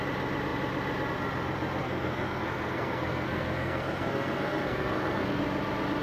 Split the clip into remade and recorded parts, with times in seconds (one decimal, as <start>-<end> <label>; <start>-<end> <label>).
0.0-1.8 recorded; 1.8-5.4 remade; 5.4-6.0 recorded